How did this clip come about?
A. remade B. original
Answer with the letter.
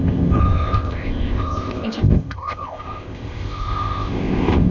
A